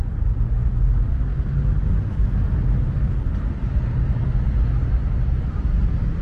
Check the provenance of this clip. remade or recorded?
recorded